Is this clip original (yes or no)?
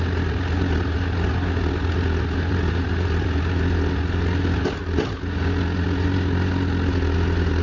yes